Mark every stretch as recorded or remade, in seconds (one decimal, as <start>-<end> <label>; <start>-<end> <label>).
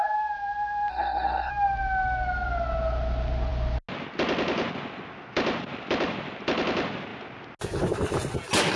0.0-0.9 recorded; 0.9-1.5 remade; 1.5-8.8 recorded